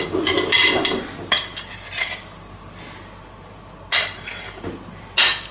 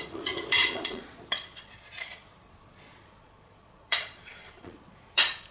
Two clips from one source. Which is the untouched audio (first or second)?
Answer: first